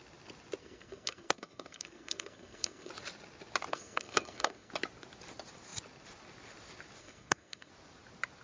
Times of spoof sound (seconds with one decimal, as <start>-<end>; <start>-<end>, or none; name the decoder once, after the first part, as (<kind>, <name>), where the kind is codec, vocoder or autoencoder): 0.6-2.9 (codec, SNAC); 3.7-4.7; 7.0-7.7